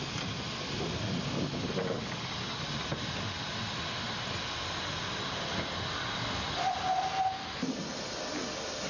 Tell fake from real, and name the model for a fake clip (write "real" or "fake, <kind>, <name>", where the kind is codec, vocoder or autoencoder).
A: real